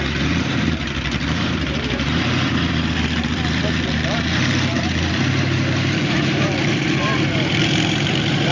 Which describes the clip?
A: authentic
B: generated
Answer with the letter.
B